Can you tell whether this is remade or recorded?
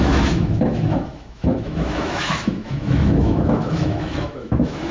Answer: remade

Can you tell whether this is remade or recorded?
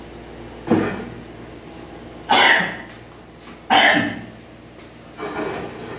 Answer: recorded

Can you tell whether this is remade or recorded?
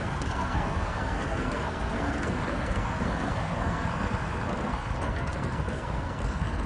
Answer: remade